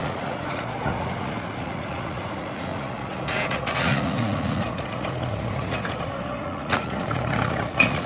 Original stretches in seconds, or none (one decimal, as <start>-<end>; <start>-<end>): none